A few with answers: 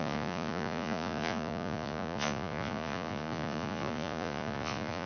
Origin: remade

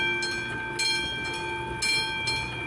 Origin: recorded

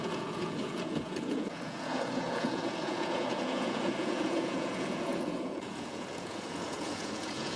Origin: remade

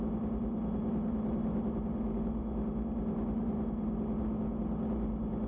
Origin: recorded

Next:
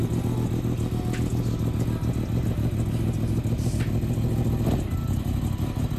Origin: recorded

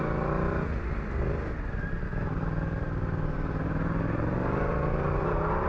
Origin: recorded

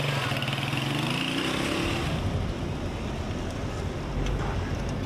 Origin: recorded